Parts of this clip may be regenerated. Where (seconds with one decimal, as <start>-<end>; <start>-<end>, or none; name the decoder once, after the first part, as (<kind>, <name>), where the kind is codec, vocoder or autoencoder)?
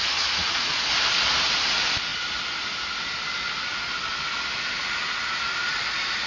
0.0-0.8 (vocoder, Vocos)